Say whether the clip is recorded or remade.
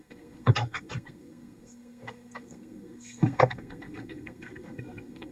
remade